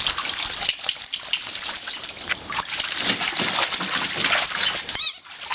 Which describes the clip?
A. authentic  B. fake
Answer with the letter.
A